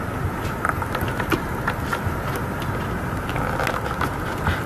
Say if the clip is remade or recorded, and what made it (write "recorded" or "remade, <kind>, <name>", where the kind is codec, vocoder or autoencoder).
recorded